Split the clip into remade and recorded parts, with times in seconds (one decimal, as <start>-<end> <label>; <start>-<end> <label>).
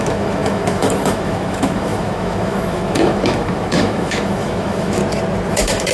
0.0-5.0 remade; 5.0-5.5 recorded; 5.5-5.9 remade